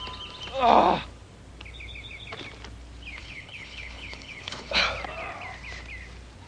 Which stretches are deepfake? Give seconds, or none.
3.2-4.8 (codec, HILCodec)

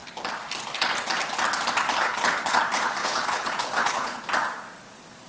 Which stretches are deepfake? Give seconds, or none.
1.9-2.6 (codec, HILCodec); 3.0-4.2

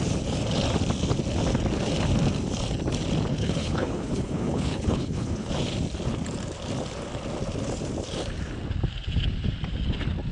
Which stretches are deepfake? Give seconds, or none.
3.3-5.5 (codec, HILCodec)

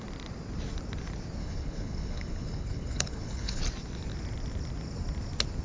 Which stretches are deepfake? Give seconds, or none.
1.4-3.6 (codec, HILCodec)

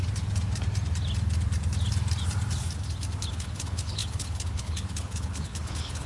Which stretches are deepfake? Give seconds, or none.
3.3-6.1 (codec, HILCodec)

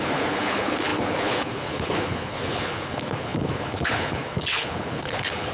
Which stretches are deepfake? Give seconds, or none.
0.0-5.5 (codec, HILCodec)